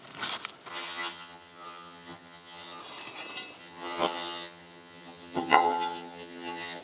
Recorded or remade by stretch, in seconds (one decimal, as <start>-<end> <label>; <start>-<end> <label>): 0.0-0.7 recorded; 0.7-2.8 remade; 2.8-3.6 recorded; 3.6-6.8 remade